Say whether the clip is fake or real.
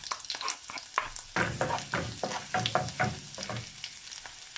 real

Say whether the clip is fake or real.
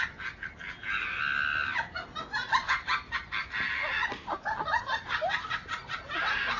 real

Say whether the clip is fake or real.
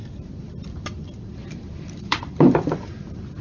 fake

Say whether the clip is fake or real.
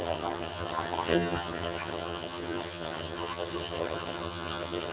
fake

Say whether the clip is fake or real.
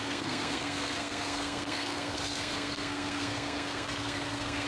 fake